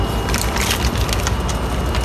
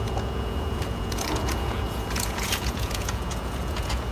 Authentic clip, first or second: first